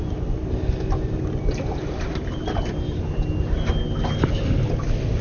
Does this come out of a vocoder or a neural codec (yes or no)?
no